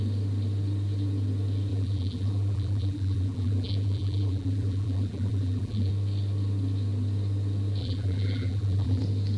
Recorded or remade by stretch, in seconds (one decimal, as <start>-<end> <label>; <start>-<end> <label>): 0.0-1.7 recorded; 1.7-5.9 remade; 5.9-7.8 recorded; 7.8-9.0 remade; 9.0-9.4 recorded